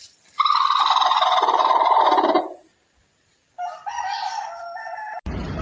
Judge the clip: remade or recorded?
recorded